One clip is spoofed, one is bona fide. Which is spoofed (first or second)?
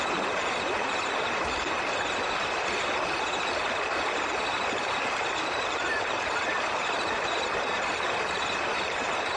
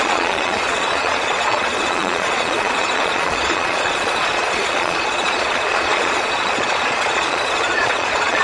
second